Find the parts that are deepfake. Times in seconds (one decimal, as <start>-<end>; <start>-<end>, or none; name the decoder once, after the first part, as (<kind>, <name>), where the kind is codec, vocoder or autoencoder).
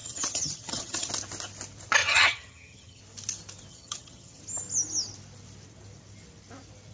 0.0-1.1 (vocoder, HiFi-GAN); 2.0-3.0; 3.7-4.4